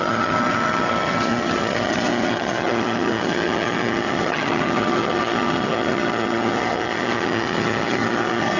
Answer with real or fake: fake